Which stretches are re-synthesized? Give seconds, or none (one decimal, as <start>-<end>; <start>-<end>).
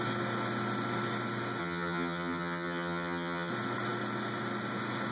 1.6-3.5